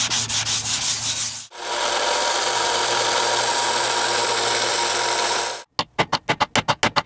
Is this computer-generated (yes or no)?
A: no